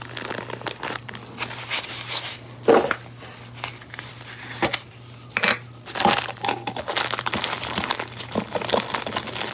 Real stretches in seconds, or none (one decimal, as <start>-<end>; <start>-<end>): 0.0-9.5